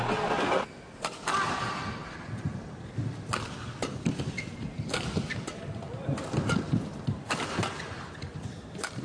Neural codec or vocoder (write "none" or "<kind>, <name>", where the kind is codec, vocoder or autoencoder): none